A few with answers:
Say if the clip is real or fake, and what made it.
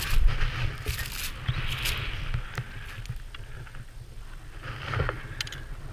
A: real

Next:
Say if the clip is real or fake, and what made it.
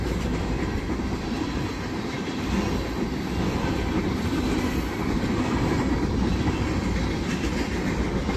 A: real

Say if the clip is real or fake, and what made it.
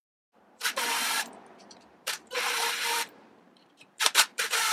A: fake, vocoder, BigVGAN v2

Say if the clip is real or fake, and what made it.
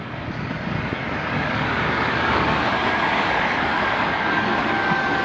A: fake, codec, DAC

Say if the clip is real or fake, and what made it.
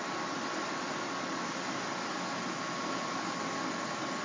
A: real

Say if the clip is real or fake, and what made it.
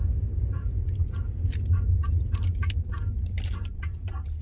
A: real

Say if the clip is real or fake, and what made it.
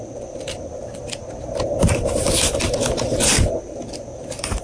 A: fake, vocoder, BigVGAN v2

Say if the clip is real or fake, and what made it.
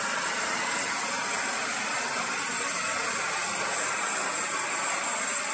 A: real